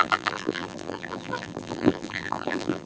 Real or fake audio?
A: fake